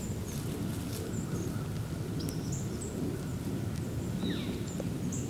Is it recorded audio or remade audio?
recorded